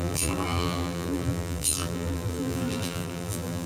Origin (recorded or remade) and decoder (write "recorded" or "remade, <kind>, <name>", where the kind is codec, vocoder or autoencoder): remade, vocoder, BigVGAN v2